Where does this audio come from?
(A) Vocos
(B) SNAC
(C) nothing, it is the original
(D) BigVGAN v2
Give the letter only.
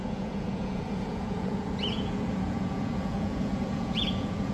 A